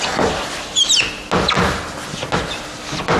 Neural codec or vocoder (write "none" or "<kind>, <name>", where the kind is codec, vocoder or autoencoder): none